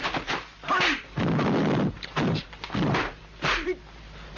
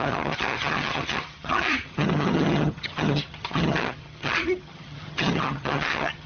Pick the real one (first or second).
first